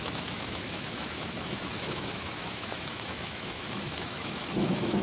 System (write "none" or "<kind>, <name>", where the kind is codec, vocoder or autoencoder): autoencoder, DAC-VAE